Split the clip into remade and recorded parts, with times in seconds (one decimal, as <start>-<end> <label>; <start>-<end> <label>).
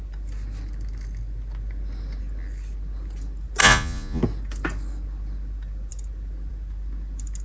0.0-3.6 recorded; 3.6-4.2 remade; 4.2-7.4 recorded